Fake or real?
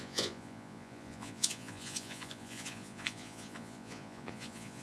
fake